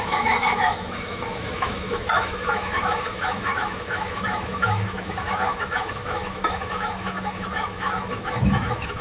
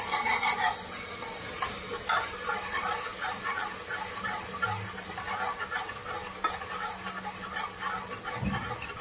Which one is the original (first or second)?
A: second